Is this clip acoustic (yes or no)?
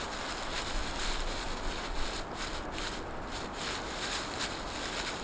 yes